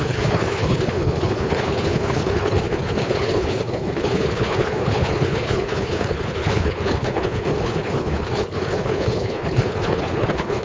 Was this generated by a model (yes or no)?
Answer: yes